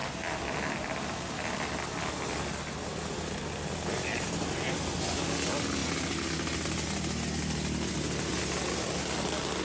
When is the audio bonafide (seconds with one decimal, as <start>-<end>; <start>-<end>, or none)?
0.0-9.6